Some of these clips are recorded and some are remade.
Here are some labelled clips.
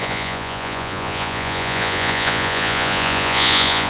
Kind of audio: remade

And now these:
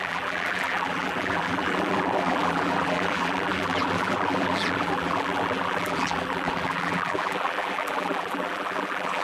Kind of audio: remade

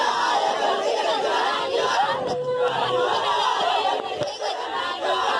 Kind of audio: recorded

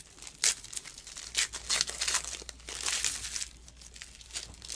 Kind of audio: recorded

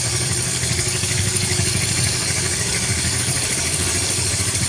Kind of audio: remade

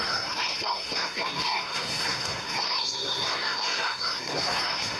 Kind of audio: remade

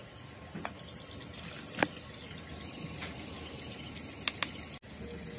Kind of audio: recorded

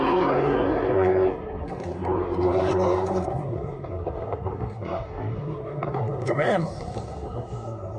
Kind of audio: remade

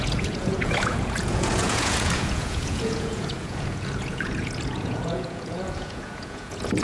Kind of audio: remade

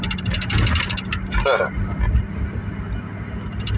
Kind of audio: recorded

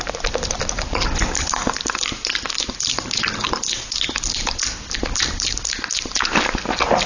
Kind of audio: recorded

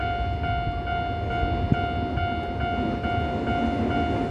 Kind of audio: recorded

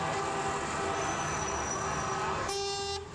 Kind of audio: recorded